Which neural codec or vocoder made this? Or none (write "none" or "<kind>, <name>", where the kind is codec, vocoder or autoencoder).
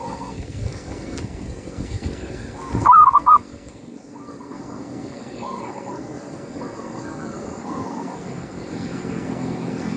codec, SNAC